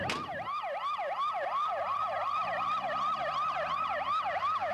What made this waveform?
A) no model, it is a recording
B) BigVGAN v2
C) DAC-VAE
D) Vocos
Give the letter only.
A